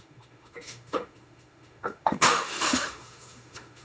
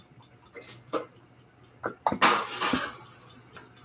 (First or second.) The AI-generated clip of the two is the first